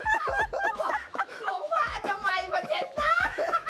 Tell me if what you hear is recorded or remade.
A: remade